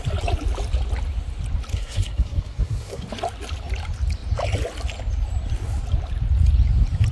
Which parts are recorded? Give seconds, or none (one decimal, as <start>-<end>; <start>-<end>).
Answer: 0.0-1.7; 3.1-7.1